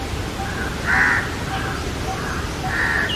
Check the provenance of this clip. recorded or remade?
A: recorded